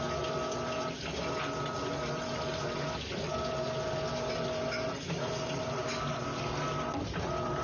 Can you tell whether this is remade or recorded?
recorded